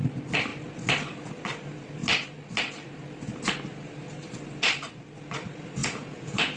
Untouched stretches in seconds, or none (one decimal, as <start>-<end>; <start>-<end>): 0.0-5.8